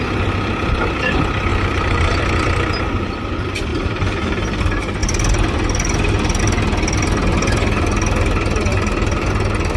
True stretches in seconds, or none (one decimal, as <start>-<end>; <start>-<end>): 0.0-1.5; 2.2-3.7; 4.6-8.7; 9.3-9.8